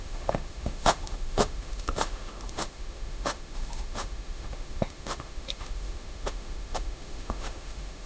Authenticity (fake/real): fake